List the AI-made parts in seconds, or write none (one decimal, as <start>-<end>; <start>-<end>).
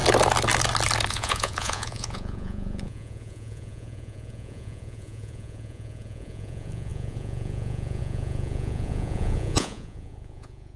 1.1-10.8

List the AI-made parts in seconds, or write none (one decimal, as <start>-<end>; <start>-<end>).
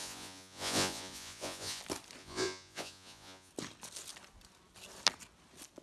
0.0-1.8; 2.2-3.5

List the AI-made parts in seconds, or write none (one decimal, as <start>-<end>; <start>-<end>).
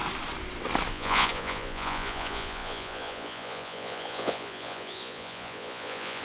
0.9-6.2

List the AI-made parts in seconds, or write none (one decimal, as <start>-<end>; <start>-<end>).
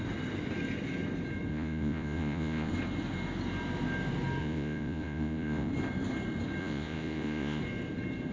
1.5-2.7; 4.4-5.7; 6.6-7.6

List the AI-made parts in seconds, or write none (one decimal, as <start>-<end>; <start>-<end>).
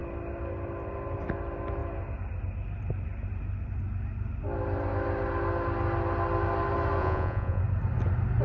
7.0-7.6